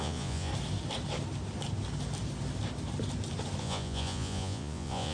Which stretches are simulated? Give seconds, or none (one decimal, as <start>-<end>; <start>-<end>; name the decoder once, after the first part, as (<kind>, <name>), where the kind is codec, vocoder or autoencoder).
0.0-0.5 (vocoder, Vocos); 3.6-5.1